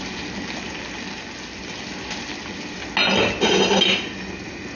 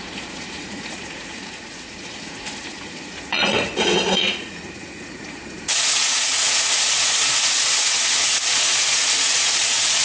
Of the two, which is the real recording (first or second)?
first